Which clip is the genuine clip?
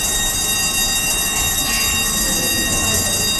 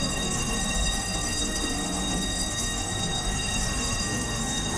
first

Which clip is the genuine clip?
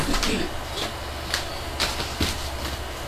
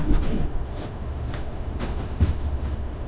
first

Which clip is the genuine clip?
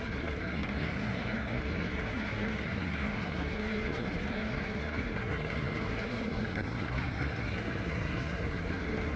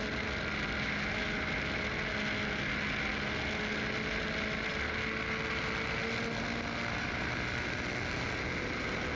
second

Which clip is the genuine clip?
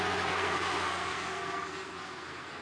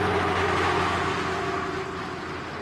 second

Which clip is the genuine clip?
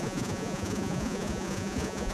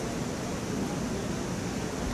second